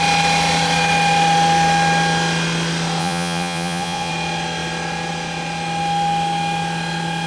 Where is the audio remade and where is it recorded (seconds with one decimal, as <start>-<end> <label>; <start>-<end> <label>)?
0.0-3.0 recorded; 3.0-4.1 remade; 4.1-7.3 recorded